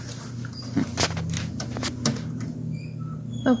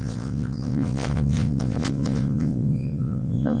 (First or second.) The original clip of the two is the first